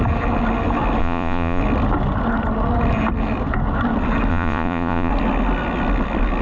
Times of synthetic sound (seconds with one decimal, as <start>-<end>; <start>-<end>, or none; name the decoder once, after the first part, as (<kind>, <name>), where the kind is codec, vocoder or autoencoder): 1.0-1.6 (vocoder, Vocos); 4.3-5.1